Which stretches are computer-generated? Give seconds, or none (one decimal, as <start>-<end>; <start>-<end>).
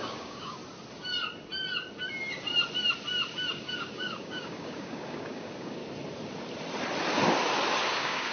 0.0-0.6; 3.5-5.8; 7.9-8.3